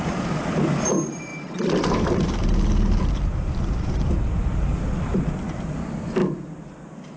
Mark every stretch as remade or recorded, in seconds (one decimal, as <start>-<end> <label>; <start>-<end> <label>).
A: 0.0-1.3 remade; 1.3-5.2 recorded; 5.2-6.2 remade; 6.2-7.2 recorded